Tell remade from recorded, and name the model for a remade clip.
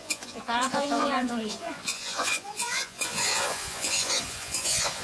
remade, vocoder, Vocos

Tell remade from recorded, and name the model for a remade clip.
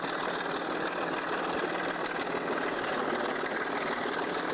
recorded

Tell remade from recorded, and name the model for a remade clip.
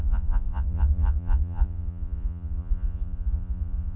remade, vocoder, Vocos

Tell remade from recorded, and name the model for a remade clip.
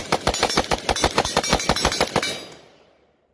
recorded